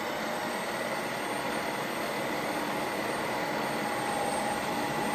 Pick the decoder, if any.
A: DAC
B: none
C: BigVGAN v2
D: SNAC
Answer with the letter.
B